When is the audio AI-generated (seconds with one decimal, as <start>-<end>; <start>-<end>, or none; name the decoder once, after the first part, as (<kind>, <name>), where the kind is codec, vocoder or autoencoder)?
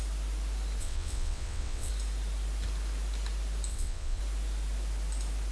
0.8-1.9 (vocoder, WaveNeXt); 3.7-4.2